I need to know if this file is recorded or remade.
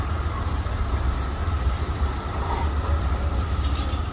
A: remade